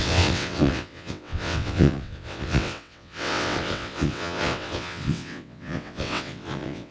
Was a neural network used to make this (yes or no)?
yes